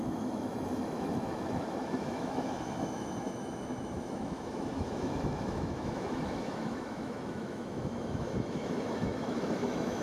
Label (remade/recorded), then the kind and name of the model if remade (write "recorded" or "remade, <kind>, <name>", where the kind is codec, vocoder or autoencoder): remade, autoencoder, DAC-VAE